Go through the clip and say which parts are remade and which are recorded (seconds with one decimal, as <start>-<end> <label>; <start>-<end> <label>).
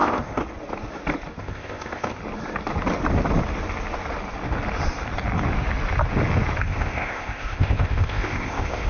0.0-0.4 remade; 0.4-1.4 recorded; 1.4-2.2 remade; 2.2-6.6 recorded; 6.6-8.9 remade